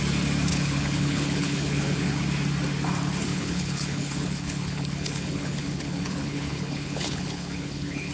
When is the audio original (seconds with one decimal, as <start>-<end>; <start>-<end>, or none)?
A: 0.0-0.5; 2.2-3.3